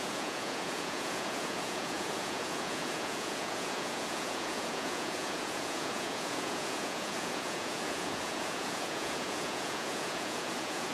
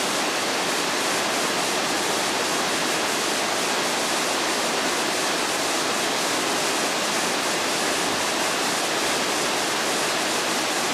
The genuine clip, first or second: second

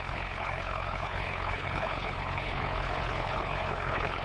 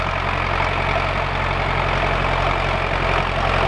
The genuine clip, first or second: second